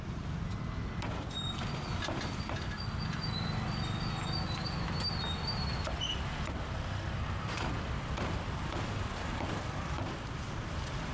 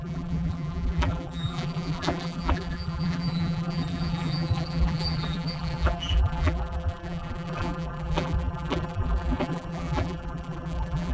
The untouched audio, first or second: first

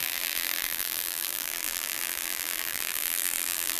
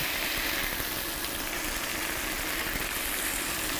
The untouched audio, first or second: second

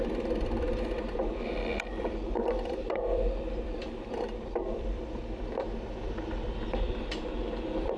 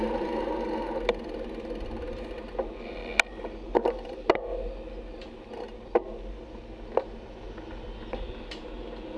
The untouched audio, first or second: second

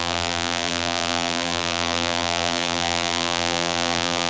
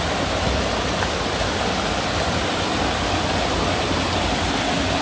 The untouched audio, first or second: second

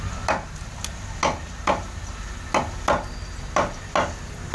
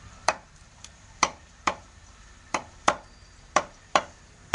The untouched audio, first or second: first